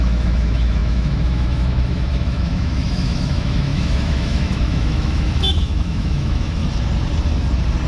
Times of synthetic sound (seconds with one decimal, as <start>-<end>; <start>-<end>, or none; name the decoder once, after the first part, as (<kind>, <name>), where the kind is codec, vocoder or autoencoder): 0.0-6.6 (autoencoder, DAC-VAE)